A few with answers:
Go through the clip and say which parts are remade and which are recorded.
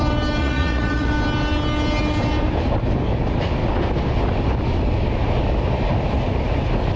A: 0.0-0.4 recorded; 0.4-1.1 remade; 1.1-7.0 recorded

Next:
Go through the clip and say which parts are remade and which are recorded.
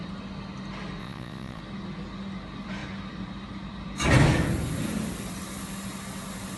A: 0.0-1.0 recorded; 1.0-1.6 remade; 1.6-6.6 recorded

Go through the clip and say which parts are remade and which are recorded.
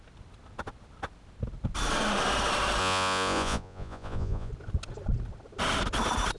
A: 0.0-2.8 recorded; 2.8-4.5 remade; 4.5-6.4 recorded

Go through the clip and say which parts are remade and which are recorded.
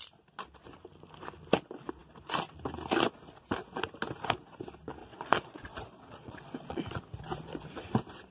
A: 0.0-5.0 recorded; 5.0-7.0 remade; 7.0-8.3 recorded